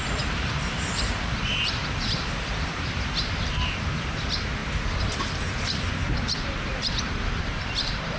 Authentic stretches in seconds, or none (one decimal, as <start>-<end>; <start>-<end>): none